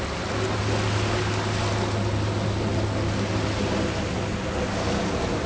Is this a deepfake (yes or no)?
no